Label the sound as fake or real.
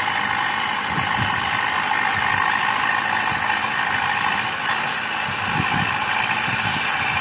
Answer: real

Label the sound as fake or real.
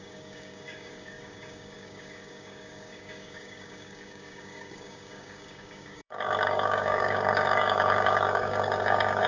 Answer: fake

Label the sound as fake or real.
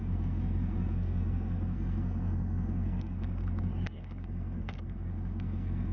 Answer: fake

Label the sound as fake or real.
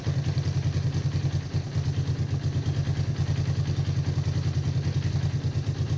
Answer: real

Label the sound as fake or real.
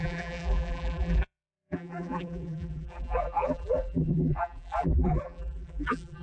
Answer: fake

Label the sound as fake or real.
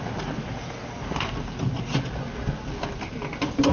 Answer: real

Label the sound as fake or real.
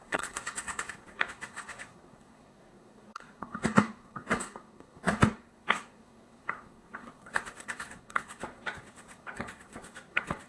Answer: fake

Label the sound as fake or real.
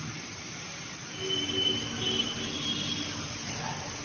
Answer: real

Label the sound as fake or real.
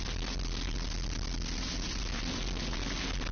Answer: real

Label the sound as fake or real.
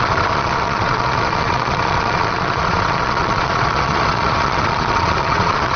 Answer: fake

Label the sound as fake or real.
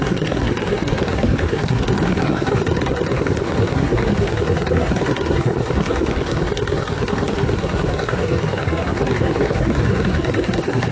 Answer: fake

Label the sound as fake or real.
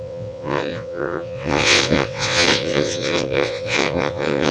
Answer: fake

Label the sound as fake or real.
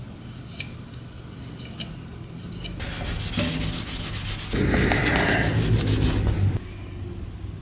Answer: real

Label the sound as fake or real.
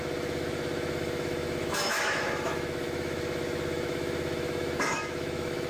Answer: fake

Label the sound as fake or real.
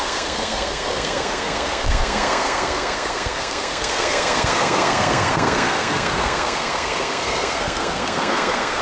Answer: fake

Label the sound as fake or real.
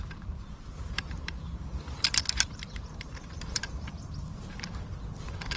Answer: fake